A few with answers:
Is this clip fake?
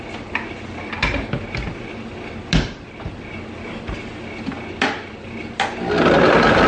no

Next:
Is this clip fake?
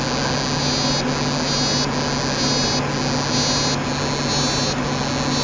no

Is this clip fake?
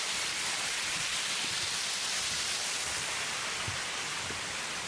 no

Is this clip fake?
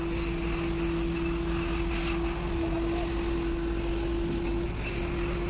no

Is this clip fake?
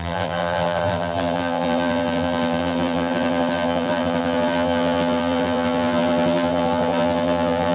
yes